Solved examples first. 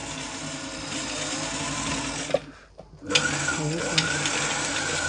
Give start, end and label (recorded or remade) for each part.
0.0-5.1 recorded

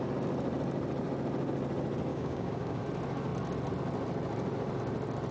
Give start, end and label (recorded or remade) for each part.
0.0-2.1 recorded; 2.1-2.8 remade; 2.8-5.3 recorded

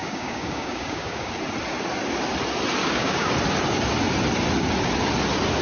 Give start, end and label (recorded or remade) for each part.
0.0-1.3 remade; 1.3-2.8 recorded; 2.8-3.3 remade; 3.3-5.6 recorded

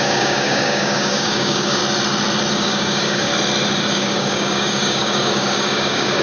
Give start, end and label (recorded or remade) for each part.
0.0-1.8 remade; 1.8-2.5 recorded; 2.5-3.3 remade; 3.3-3.9 recorded; 3.9-6.2 remade